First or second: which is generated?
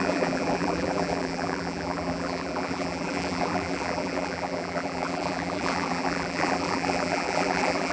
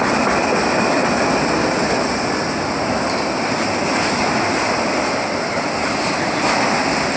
first